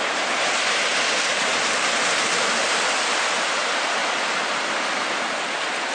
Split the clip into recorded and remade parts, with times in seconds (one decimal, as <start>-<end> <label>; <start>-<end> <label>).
0.0-5.9 recorded